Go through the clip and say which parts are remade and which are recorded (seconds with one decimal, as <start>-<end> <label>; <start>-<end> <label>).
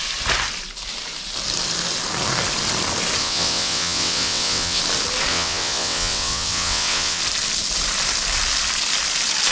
0.0-3.2 recorded; 3.2-4.8 remade; 4.8-5.3 recorded; 5.3-7.2 remade; 7.2-9.5 recorded